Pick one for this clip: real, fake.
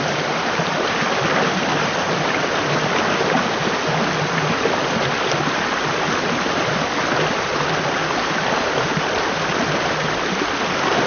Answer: real